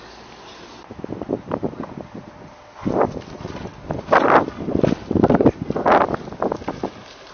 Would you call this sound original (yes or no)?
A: yes